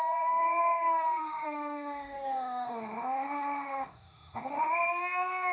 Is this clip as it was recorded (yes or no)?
no